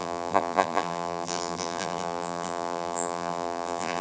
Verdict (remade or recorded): remade